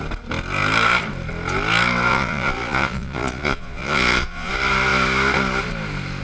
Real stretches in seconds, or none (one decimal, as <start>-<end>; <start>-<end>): 0.0-2.1; 4.5-6.2